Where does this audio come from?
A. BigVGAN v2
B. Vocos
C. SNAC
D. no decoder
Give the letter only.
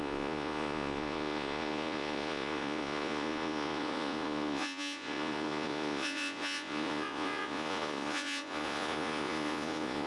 B